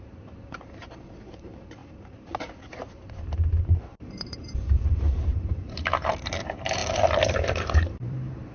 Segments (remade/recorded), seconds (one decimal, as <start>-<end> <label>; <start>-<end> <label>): 0.0-6.8 remade; 6.8-7.3 recorded; 7.3-8.5 remade

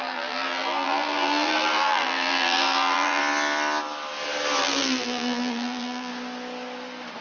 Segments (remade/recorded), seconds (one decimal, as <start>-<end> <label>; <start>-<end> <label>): 0.0-3.2 remade; 3.2-4.6 recorded; 4.6-6.1 remade; 6.1-7.2 recorded

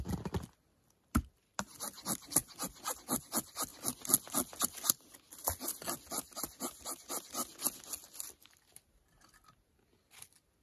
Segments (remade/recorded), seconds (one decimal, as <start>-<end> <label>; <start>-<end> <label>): 0.0-10.6 recorded

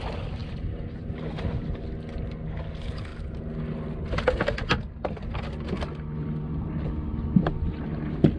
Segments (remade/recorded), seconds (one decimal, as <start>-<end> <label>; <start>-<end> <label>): 0.0-0.4 recorded; 0.4-1.5 remade; 1.5-8.4 recorded

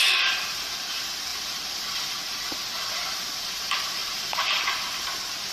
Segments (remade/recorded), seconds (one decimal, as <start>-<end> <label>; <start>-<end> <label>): 0.0-4.0 recorded; 4.0-5.5 remade

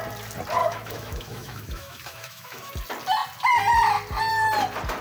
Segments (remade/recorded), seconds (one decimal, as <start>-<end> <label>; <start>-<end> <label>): 0.0-0.6 recorded; 0.6-2.7 remade; 2.7-5.0 recorded

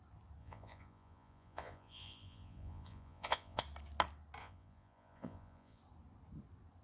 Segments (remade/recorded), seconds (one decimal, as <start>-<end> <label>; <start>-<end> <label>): 0.0-0.4 recorded; 0.4-3.6 remade; 3.6-4.4 recorded; 4.4-5.8 remade; 5.8-6.8 recorded